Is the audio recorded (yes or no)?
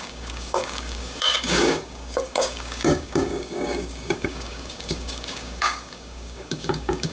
no